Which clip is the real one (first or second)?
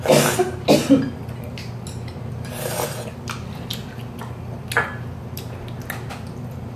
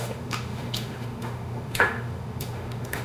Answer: first